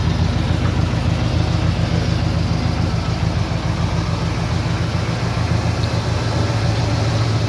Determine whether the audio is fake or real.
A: real